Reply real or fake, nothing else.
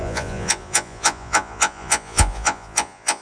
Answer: fake